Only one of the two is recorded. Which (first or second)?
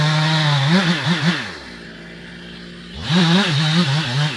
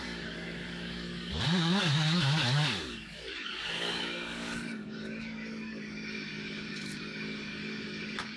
first